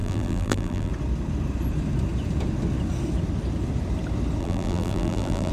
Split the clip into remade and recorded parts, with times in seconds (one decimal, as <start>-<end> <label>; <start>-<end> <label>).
0.0-0.9 remade; 0.9-4.4 recorded; 4.4-5.5 remade